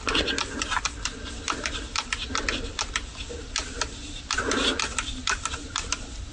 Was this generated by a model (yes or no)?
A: no